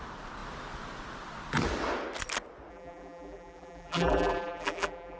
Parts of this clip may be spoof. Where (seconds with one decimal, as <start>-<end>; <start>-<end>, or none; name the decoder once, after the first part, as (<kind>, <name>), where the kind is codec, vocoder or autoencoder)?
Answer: 2.7-5.2 (vocoder, BigVGAN v2)